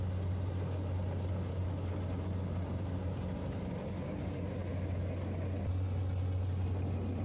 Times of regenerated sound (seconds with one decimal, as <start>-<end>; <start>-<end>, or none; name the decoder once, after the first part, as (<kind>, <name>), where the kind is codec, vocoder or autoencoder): none